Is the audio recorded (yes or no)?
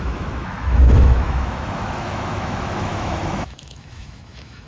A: no